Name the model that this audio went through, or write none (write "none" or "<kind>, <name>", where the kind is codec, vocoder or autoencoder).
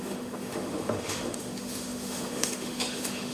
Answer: autoencoder, DAC-VAE